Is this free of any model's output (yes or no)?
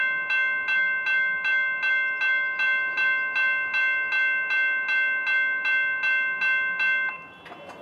yes